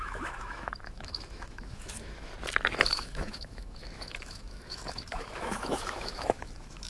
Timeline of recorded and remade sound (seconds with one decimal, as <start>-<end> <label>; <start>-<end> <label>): 0.0-2.3 remade; 2.3-2.9 recorded; 2.9-6.9 remade